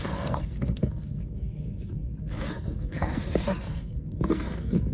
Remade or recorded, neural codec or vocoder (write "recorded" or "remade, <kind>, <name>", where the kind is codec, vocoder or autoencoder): remade, codec, SNAC